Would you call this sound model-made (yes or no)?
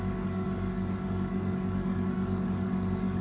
yes